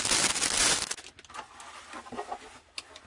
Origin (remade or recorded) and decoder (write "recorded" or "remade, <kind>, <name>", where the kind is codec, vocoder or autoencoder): recorded